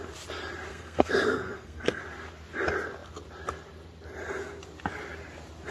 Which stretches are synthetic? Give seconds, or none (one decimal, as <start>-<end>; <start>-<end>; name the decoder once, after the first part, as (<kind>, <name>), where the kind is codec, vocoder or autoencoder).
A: 0.7-2.0 (codec, SNAC)